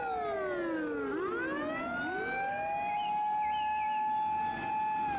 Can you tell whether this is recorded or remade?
recorded